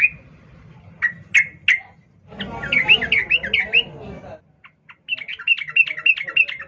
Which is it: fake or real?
real